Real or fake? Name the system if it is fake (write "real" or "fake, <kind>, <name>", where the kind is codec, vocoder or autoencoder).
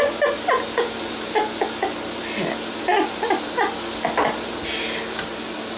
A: real